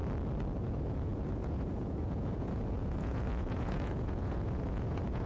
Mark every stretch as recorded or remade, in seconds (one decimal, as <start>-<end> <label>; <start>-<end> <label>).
0.0-0.6 recorded; 0.6-5.3 remade